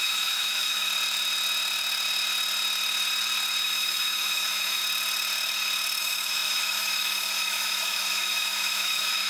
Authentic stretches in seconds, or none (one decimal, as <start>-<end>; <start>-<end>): 0.9-3.6; 4.8-6.0